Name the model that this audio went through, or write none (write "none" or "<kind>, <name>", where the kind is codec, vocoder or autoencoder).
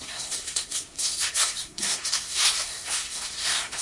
codec, SNAC